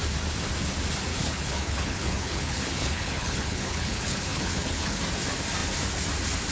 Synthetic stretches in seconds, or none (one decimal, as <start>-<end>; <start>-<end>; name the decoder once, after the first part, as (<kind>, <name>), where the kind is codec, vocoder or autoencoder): 1.1-5.0 (codec, HILCodec)